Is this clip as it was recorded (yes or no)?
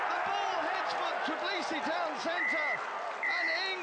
yes